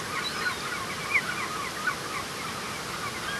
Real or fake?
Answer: real